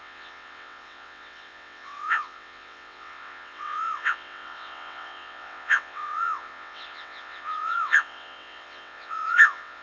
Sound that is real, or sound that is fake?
fake